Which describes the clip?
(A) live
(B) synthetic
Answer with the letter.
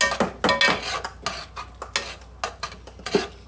A